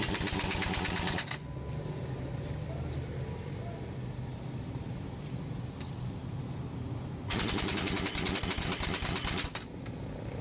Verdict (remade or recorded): recorded